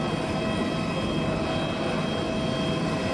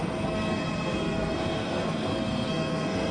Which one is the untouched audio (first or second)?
first